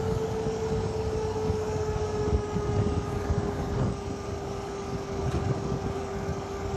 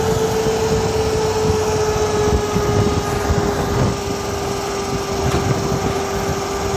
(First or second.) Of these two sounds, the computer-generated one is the first